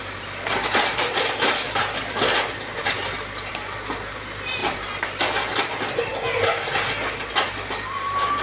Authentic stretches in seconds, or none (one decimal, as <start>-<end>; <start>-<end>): 0.0-4.6; 5.5-8.4